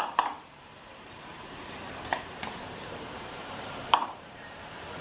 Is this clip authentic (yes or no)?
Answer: no